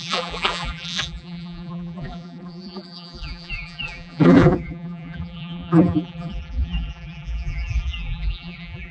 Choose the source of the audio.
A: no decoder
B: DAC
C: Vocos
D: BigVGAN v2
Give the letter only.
D